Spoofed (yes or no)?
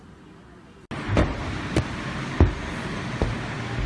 no